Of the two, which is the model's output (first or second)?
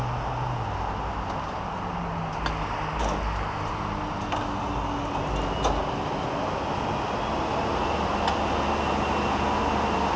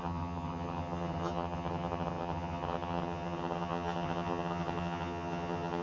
second